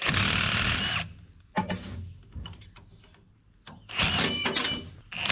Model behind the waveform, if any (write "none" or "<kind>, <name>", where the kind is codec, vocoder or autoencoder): none